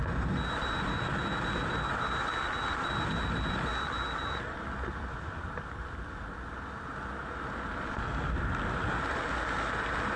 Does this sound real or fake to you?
real